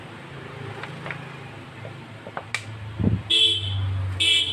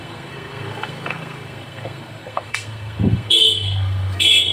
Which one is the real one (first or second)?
first